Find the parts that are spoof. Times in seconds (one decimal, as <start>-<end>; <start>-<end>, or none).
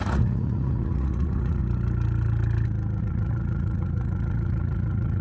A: 0.0-1.6; 3.0-5.2